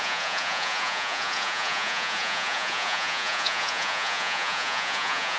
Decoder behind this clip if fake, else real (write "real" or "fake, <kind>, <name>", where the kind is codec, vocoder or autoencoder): fake, vocoder, Vocos